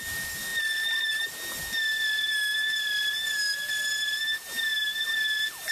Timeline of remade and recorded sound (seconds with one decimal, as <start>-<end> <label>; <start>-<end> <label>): 0.0-5.7 recorded